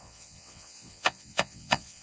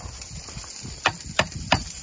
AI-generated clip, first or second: first